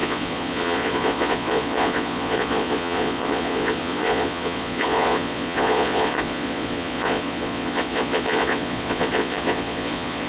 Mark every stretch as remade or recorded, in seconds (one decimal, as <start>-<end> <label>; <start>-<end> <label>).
0.0-10.3 remade